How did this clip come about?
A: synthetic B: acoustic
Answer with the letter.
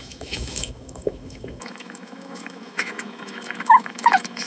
A